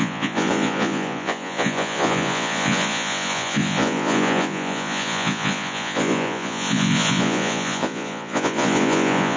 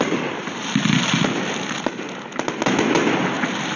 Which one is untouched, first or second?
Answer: second